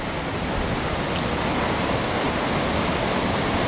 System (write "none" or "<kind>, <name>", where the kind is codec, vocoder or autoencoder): none